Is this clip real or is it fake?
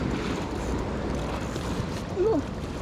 real